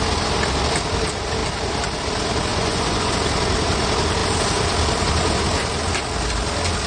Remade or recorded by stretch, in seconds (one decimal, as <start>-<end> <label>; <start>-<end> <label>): 0.0-2.5 recorded; 2.5-3.1 remade; 3.1-6.9 recorded